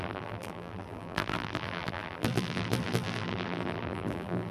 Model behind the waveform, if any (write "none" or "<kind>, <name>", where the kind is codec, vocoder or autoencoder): vocoder, BigVGAN v2